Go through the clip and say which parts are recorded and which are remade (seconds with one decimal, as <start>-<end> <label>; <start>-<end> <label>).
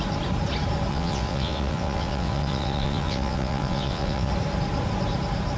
0.0-0.9 recorded; 0.9-4.3 remade; 4.3-5.6 recorded